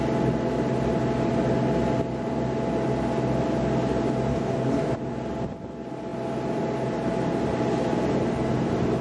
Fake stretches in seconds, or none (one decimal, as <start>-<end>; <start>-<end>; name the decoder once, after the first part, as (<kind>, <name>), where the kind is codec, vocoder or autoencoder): 4.3-4.9 (codec, DAC)